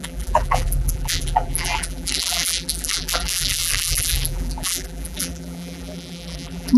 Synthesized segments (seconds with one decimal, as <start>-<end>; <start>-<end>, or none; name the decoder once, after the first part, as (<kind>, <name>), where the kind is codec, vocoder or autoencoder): 0.0-6.8 (vocoder, BigVGAN v2)

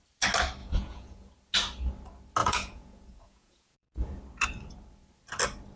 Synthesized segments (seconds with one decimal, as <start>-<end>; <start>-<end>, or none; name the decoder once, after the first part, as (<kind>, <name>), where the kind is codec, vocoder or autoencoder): 0.6-1.3 (vocoder, Vocos); 2.4-4.2